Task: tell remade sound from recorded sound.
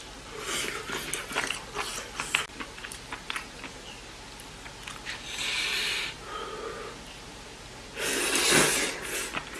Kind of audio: recorded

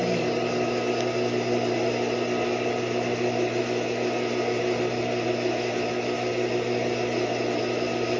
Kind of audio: recorded